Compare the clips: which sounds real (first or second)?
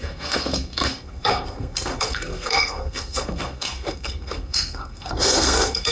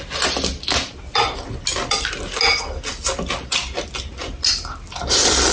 second